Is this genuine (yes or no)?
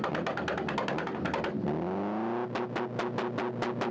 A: yes